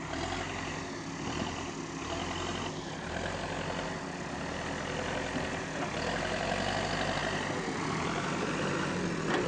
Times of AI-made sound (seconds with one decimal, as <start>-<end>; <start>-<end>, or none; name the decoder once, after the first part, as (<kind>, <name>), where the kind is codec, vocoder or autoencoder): none

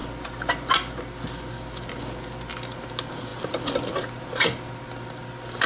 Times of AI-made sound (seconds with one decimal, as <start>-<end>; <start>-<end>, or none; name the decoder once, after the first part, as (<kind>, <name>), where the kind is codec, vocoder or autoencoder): none

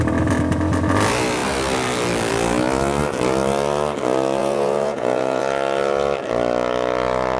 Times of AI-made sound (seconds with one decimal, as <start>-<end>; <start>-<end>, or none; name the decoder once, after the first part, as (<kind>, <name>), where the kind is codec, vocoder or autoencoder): 4.4-5.4 (vocoder, Vocos)

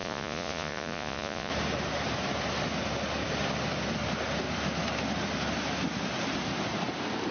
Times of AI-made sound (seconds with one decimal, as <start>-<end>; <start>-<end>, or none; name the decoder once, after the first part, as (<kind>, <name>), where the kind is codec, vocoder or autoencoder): 0.0-1.5 (vocoder, Vocos)

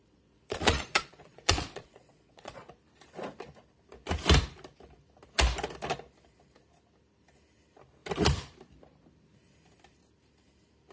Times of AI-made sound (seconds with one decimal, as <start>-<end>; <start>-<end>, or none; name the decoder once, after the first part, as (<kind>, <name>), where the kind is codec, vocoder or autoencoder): 0.0-2.7 (vocoder, Vocos)